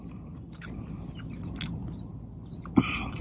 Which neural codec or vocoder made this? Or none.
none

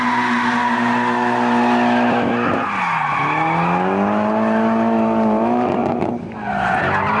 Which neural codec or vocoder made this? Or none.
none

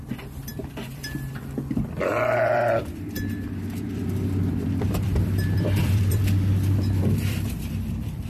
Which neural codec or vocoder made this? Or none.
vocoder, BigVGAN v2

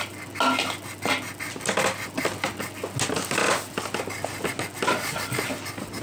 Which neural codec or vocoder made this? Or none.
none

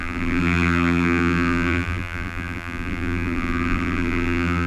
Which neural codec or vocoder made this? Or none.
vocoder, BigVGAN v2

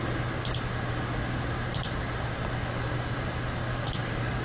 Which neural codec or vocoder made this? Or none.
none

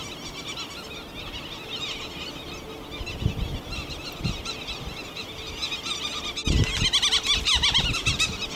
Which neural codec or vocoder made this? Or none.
none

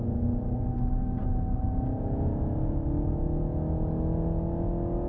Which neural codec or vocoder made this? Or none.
none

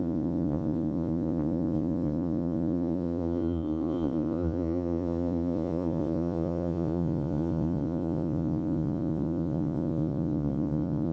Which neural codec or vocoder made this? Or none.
vocoder, Vocos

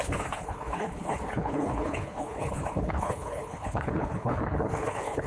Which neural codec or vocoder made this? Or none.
codec, HILCodec